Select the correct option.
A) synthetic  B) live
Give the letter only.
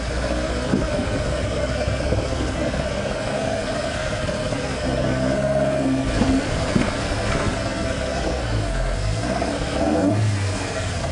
A